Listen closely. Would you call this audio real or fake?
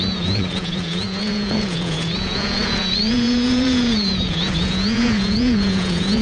fake